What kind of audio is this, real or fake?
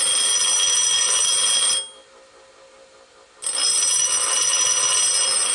real